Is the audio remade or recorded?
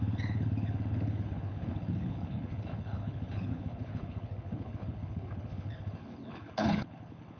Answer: remade